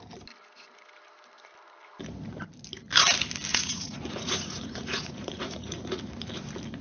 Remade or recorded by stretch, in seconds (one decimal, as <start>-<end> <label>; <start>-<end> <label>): 0.0-3.5 recorded; 3.5-6.0 remade; 6.0-6.8 recorded